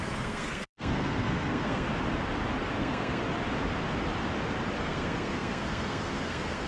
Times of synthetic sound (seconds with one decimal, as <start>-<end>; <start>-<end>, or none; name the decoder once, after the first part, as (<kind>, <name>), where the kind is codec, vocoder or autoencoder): 0.0-1.9 (codec, SNAC); 2.8-3.2; 4.8-6.7